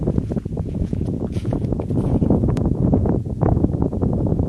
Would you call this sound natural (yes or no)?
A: no